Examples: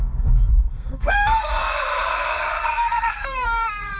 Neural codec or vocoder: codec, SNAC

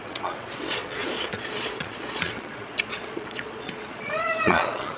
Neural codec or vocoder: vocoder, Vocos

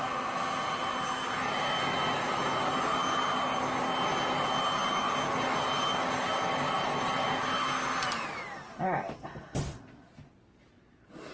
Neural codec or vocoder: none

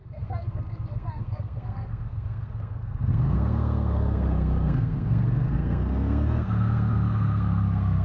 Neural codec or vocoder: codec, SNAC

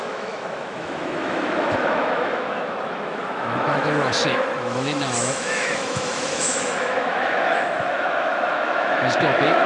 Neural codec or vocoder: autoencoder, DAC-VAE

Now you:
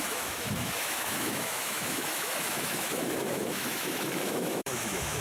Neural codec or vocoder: autoencoder, DAC-VAE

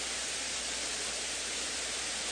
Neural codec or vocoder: none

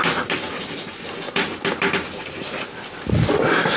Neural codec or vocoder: none